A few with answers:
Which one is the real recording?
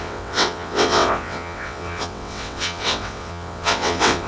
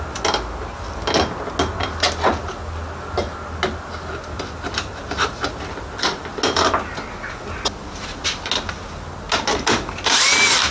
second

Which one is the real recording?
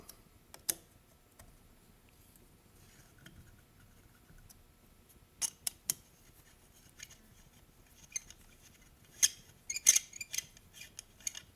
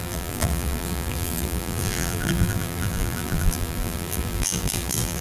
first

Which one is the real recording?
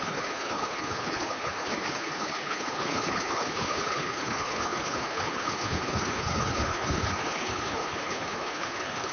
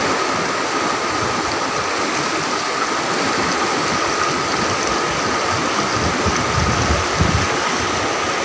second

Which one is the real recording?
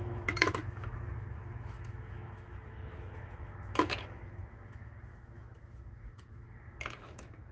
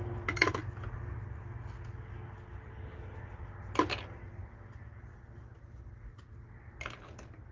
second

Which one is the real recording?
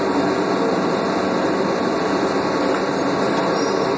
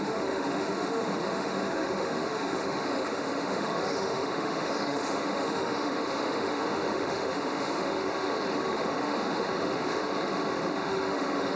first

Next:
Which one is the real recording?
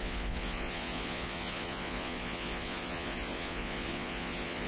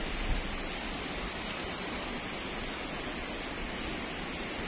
second